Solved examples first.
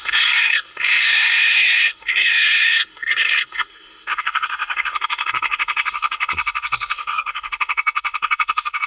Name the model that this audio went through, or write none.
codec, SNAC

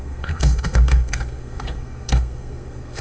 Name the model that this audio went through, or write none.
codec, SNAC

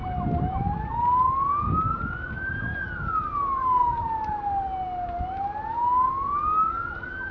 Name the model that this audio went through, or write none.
none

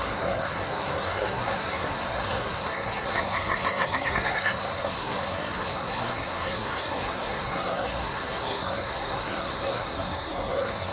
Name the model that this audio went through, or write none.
codec, SNAC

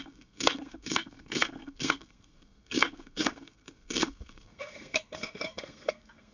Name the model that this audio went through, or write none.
codec, SNAC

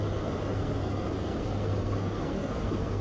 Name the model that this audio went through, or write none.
codec, SNAC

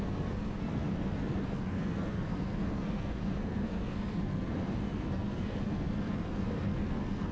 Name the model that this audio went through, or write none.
codec, SNAC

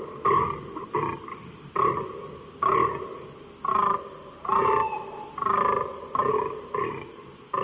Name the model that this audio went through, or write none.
none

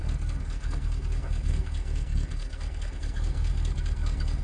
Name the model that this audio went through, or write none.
codec, SNAC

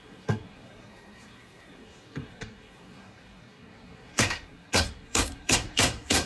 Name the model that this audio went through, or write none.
codec, SNAC